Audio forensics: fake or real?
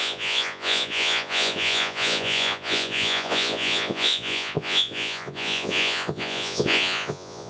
fake